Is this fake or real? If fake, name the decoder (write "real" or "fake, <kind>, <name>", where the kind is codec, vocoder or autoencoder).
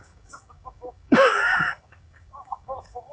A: fake, codec, DAC